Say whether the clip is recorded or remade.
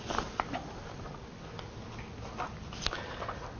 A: recorded